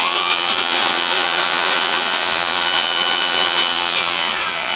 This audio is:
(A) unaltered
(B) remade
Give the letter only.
B